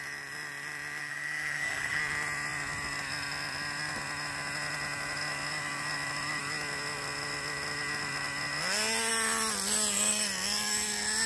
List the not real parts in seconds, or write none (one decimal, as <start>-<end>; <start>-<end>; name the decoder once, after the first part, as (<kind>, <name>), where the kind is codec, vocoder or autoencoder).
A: 1.0-2.0 (codec, SNAC)